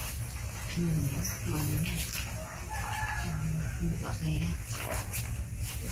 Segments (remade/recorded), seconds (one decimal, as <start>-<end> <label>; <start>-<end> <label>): 0.0-5.9 recorded